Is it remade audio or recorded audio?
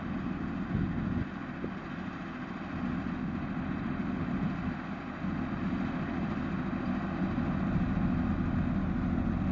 recorded